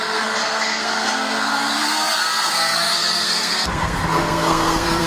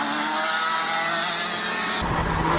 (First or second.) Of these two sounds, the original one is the second